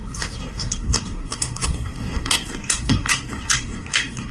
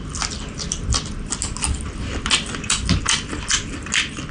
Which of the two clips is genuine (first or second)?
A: second